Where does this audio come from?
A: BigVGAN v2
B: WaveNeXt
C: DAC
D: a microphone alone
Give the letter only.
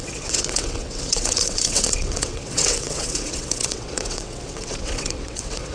B